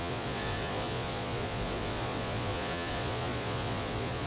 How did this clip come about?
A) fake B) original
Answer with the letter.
A